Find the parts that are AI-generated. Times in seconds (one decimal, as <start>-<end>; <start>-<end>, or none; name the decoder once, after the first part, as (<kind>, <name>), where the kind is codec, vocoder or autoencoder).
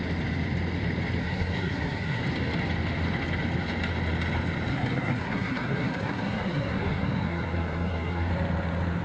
1.2-2.2 (codec, SNAC); 4.7-8.3